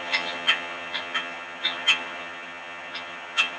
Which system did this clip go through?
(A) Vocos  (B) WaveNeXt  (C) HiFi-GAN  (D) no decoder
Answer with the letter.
C